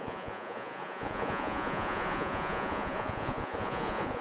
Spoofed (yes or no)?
yes